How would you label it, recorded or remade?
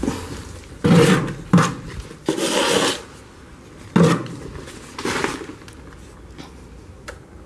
recorded